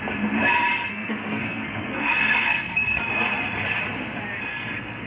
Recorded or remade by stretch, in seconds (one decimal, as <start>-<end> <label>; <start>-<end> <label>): 0.0-0.9 recorded; 0.9-3.0 remade; 3.0-4.5 recorded; 4.5-5.1 remade